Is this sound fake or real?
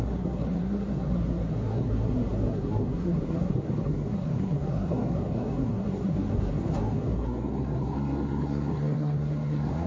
fake